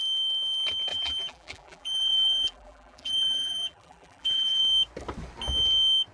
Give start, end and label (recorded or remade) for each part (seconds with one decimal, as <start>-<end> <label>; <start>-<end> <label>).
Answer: 0.0-0.9 recorded; 0.9-4.6 remade; 4.6-6.1 recorded